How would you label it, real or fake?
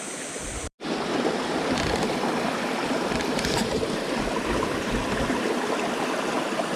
fake